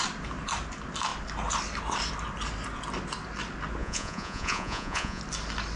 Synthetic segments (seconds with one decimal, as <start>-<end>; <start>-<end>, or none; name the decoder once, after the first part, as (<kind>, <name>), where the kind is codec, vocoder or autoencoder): 3.8-5.2 (vocoder, Vocos)

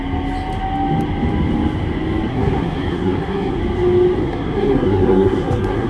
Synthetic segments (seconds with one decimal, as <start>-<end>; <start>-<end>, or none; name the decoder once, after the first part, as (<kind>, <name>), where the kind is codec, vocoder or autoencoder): 2.3-3.6 (codec, SNAC); 4.2-5.9

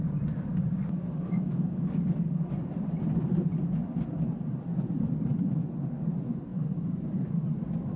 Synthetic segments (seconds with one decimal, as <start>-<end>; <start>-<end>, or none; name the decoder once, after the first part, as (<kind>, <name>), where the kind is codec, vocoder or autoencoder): none

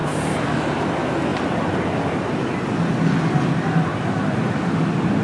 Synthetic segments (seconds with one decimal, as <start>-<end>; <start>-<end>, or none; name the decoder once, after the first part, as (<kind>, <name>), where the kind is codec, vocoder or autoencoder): 0.0-0.7 (vocoder, BigVGAN v2); 1.3-2.7

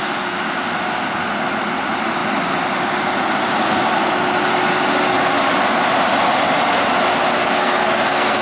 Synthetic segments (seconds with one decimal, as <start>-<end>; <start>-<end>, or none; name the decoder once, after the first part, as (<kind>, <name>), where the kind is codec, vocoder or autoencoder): 7.4-8.4 (codec, SNAC)